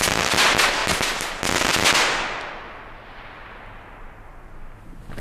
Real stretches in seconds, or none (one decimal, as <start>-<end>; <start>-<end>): 0.0-5.2